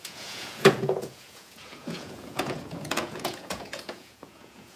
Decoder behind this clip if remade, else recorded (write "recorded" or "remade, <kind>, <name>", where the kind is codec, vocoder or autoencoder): remade, vocoder, Vocos